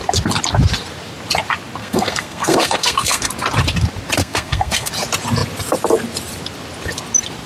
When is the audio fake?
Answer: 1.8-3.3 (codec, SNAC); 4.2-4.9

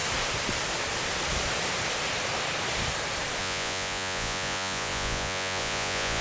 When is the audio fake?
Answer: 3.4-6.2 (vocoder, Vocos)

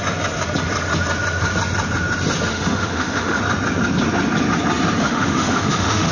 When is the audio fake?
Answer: 2.5-3.4 (autoencoder, DAC-VAE); 5.0-6.1

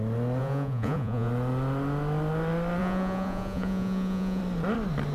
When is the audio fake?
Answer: 0.4-1.3 (vocoder, Vocos); 2.8-4.4

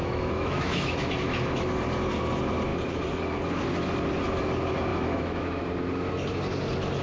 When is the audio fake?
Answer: 0.0-1.7 (autoencoder, DAC-VAE); 4.9-5.6

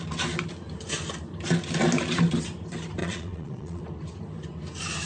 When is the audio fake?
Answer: 3.0-3.8 (vocoder, Vocos)